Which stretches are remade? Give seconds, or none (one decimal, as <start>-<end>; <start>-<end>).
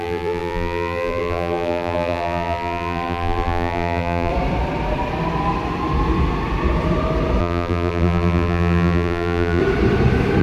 0.0-4.3; 7.4-9.6